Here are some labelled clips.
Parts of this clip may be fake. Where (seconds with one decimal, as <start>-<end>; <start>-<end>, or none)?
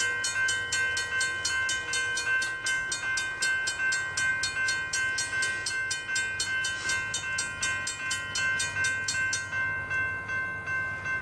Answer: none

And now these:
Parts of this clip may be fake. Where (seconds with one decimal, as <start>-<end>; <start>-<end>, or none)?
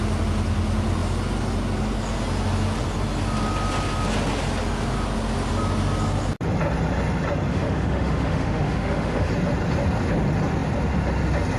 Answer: 7.5-9.3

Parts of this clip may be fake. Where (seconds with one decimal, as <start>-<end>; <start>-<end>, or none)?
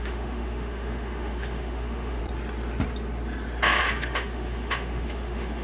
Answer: 0.0-2.2; 3.8-5.6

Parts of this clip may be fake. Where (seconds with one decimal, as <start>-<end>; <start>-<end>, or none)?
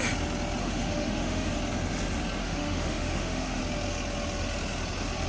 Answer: 0.6-1.5; 2.4-3.6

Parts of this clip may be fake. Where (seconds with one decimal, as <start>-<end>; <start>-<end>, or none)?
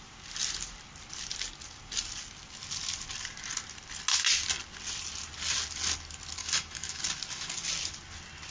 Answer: 6.4-7.0